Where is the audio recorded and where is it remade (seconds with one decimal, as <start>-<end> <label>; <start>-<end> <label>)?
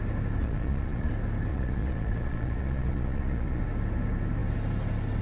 0.0-0.4 recorded; 0.4-1.1 remade; 1.1-1.5 recorded; 1.5-3.6 remade; 3.6-5.2 recorded